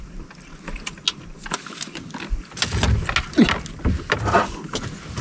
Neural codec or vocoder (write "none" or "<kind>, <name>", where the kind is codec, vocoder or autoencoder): none